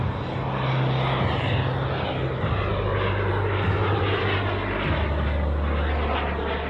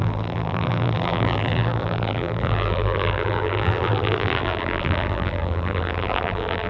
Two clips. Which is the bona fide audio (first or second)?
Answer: first